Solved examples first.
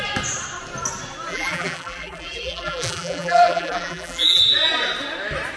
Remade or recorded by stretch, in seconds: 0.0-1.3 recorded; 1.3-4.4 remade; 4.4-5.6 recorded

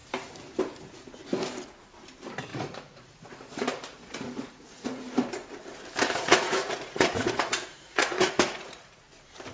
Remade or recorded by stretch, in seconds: 0.0-2.5 recorded; 2.5-5.0 remade; 5.0-6.2 recorded; 6.2-9.0 remade; 9.0-9.5 recorded

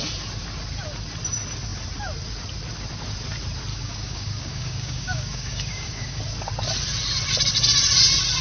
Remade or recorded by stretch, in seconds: 0.0-3.7 recorded; 3.7-6.2 remade; 6.2-8.4 recorded

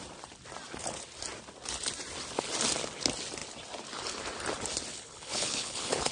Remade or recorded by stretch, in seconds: 0.0-4.9 recorded; 4.9-6.1 remade

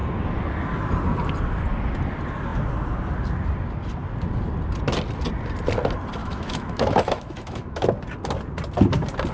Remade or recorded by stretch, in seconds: 0.0-6.2 recorded; 6.2-7.8 remade; 7.8-9.3 recorded